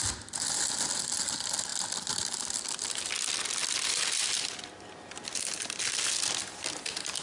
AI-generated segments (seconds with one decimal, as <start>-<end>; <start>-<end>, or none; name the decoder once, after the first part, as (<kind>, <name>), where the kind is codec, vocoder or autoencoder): none